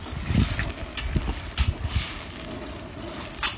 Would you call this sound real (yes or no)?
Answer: yes